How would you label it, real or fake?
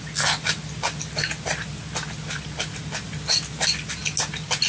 real